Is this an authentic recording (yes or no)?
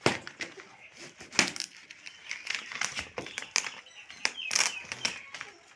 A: yes